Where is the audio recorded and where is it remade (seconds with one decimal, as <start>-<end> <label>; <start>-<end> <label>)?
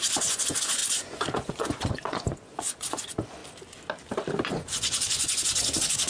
0.0-3.4 remade; 3.4-4.5 recorded; 4.5-6.1 remade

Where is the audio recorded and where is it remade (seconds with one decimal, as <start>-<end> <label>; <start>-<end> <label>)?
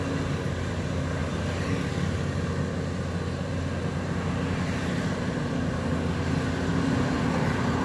0.0-7.8 recorded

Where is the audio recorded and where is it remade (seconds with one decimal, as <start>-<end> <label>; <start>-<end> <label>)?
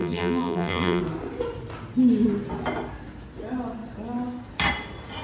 0.0-1.0 remade; 1.0-5.2 recorded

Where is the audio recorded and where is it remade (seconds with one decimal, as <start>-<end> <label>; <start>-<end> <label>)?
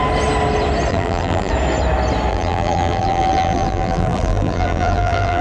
0.0-0.9 recorded; 0.9-1.5 remade; 1.5-2.3 recorded; 2.3-5.4 remade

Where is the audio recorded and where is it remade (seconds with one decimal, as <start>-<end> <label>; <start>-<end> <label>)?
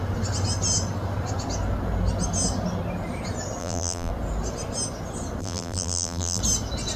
0.0-3.6 recorded; 3.6-4.1 remade; 4.1-5.4 recorded; 5.4-6.4 remade; 6.4-7.0 recorded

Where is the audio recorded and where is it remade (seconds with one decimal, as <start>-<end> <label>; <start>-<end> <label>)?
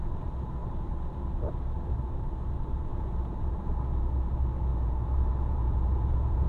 0.0-2.9 recorded; 2.9-3.6 remade; 3.6-4.7 recorded; 4.7-6.5 remade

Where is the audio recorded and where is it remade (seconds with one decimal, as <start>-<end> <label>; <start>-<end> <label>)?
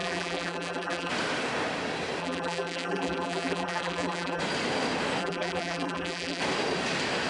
0.0-1.1 remade; 1.1-2.2 recorded; 2.2-4.4 remade; 4.4-5.2 recorded; 5.2-6.4 remade; 6.4-7.3 recorded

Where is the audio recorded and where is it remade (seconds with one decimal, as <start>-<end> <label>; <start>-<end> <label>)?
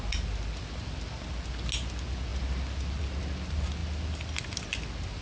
0.0-5.2 recorded